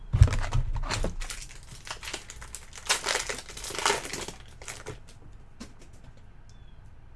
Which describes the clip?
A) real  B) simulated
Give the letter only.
A